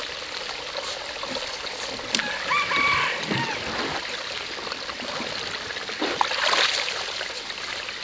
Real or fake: real